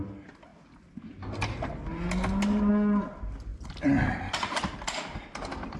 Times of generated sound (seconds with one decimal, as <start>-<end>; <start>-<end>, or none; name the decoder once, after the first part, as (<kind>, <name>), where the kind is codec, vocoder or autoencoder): none